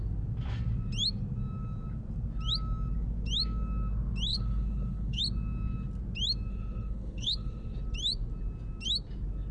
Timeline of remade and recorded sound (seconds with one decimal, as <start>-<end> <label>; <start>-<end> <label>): 0.0-4.3 recorded; 4.3-5.2 remade; 5.2-6.5 recorded; 6.5-7.8 remade; 7.8-9.5 recorded